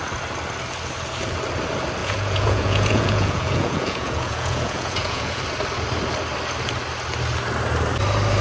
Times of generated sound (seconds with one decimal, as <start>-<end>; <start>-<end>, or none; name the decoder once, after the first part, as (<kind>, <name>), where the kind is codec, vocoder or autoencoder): 2.0-5.4 (vocoder, Vocos)